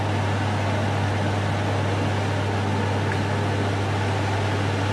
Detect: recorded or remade recorded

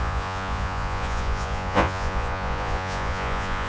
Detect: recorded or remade remade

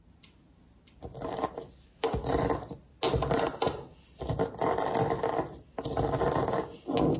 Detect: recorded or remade recorded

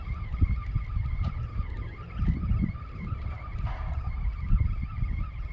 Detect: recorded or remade recorded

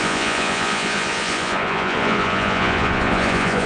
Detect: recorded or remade remade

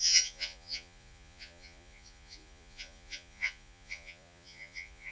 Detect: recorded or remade remade